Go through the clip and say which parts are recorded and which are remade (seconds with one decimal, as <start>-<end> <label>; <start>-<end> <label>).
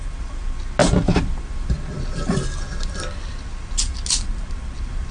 0.0-5.1 recorded